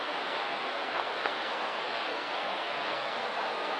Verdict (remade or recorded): remade